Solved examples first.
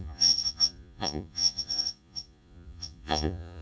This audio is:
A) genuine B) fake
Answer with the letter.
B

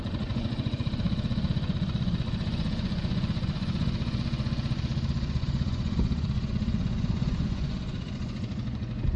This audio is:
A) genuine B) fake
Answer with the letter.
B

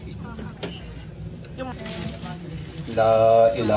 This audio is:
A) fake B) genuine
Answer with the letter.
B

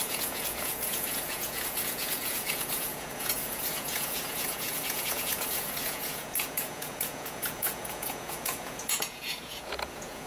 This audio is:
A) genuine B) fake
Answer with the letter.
B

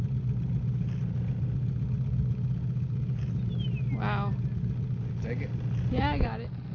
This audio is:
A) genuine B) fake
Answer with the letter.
A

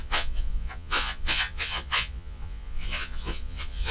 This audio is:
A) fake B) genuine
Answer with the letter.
A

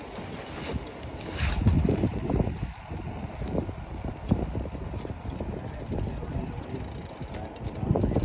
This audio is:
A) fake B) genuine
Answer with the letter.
B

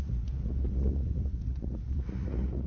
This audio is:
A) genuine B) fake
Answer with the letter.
B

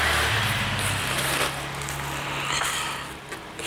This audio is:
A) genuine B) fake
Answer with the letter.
A